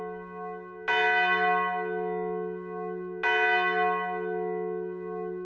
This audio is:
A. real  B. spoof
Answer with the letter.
A